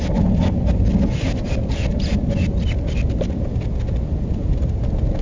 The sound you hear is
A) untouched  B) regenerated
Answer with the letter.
A